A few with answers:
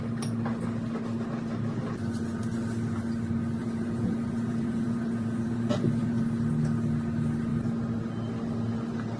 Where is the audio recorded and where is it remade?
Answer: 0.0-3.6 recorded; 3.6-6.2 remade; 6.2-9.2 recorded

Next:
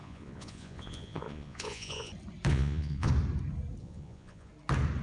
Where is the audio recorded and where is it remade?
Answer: 0.0-2.1 remade; 2.1-2.5 recorded; 2.5-3.1 remade; 3.1-3.8 recorded; 3.8-4.5 remade; 4.5-5.0 recorded

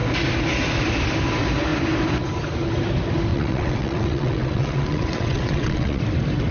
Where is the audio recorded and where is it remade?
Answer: 0.0-3.3 recorded; 3.3-6.0 remade; 6.0-6.5 recorded

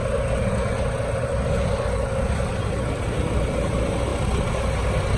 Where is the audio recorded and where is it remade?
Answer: 0.0-5.2 recorded

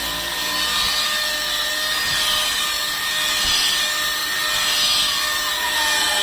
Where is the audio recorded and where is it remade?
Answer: 0.0-6.2 recorded

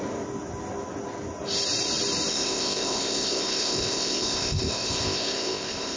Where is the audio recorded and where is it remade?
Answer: 0.0-2.3 recorded; 2.3-6.0 remade

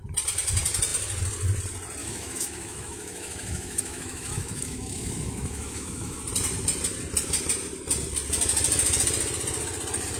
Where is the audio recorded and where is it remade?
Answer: 0.0-2.0 recorded; 2.0-6.2 remade; 6.2-10.2 recorded